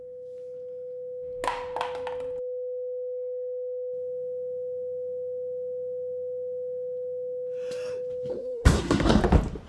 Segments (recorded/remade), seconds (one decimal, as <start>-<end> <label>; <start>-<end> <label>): 0.0-8.3 recorded; 8.3-9.2 remade; 9.2-9.7 recorded